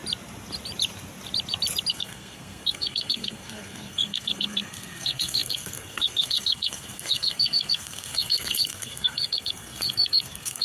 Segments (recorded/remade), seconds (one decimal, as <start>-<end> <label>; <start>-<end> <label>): 0.0-1.9 recorded; 1.9-10.6 remade

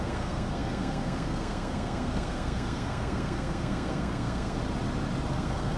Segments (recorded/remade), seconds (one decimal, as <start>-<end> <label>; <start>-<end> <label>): 0.0-4.6 remade; 4.6-5.3 recorded; 5.3-5.8 remade

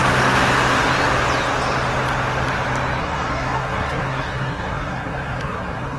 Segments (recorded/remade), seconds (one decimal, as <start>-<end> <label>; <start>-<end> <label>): 0.0-3.0 recorded; 3.0-6.0 remade

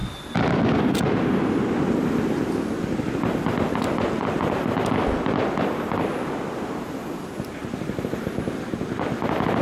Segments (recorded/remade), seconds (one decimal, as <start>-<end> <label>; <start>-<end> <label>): 0.0-9.6 recorded

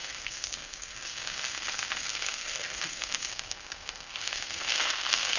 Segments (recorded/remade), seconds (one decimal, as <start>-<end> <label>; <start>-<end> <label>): 0.0-5.4 remade